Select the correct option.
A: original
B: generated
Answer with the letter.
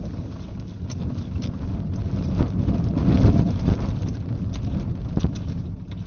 A